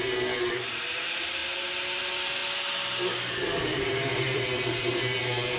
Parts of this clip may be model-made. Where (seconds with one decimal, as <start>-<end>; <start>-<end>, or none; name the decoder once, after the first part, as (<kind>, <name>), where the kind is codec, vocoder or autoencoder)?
0.0-1.4 (vocoder, BigVGAN v2); 2.0-2.4; 3.1-5.6